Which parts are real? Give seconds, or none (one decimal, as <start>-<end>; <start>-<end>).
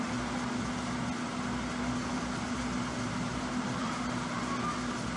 0.0-3.3; 4.4-5.2